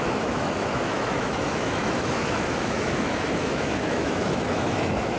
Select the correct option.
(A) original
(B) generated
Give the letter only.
B